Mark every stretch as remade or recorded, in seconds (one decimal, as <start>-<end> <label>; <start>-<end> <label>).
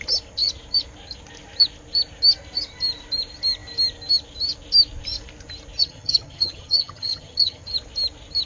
0.0-5.8 recorded; 5.8-7.7 remade; 7.7-8.5 recorded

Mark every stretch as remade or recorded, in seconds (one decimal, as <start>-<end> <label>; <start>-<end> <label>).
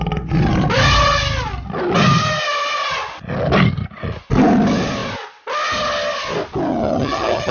0.0-6.7 recorded; 6.7-7.5 remade